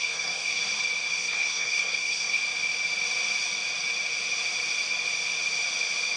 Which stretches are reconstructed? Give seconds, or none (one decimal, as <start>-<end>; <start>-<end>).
0.0-0.6; 1.1-2.4